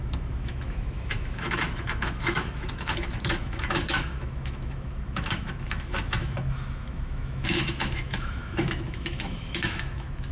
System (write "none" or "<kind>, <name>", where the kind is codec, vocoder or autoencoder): autoencoder, DAC-VAE